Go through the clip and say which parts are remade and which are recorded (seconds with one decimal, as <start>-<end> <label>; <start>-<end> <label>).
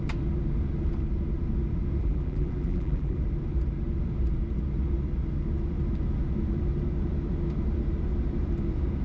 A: 0.0-2.0 recorded; 2.0-3.2 remade; 3.2-9.0 recorded